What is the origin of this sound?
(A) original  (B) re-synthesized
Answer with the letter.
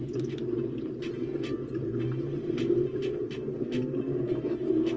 A